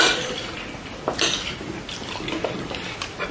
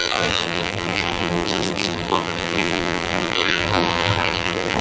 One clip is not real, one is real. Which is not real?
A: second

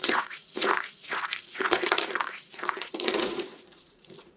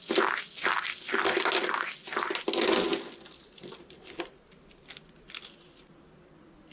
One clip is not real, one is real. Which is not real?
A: first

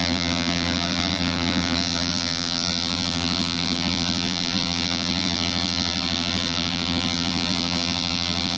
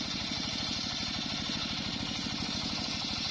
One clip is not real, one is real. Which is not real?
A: first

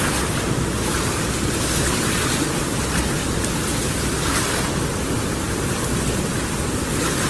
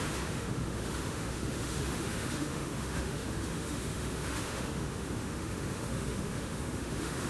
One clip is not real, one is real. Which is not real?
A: second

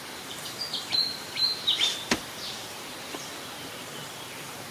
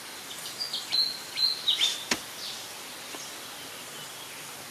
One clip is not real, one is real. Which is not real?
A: first